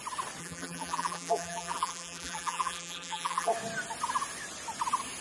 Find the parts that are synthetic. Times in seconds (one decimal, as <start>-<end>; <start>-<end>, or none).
0.4-3.5